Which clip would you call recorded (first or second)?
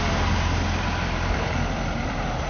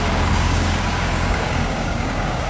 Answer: first